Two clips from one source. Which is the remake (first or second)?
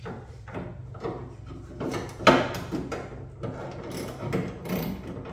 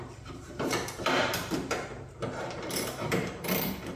second